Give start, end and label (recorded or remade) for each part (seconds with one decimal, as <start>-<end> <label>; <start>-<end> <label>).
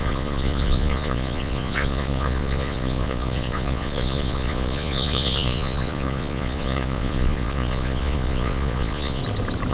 0.0-9.2 remade; 9.2-9.7 recorded